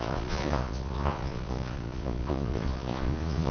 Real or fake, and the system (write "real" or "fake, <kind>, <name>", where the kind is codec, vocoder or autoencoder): fake, vocoder, Vocos